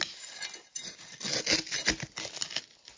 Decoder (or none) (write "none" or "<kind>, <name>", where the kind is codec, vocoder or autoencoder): none